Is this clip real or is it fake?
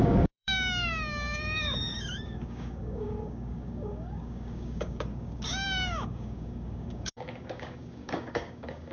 fake